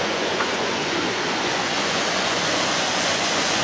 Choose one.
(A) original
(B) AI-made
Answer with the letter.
B